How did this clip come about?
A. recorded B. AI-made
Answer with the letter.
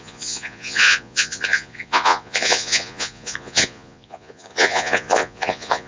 B